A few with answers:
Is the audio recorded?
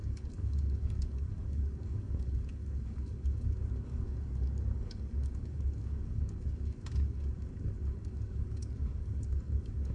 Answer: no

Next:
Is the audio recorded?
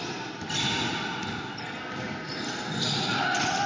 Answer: yes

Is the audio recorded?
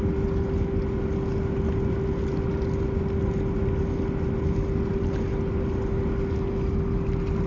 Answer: yes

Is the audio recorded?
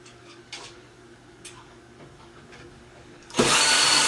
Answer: no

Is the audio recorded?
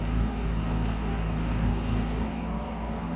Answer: no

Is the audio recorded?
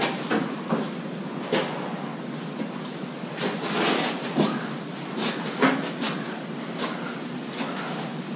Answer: yes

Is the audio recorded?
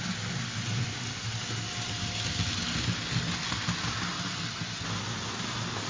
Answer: yes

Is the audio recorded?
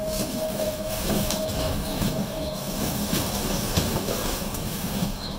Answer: no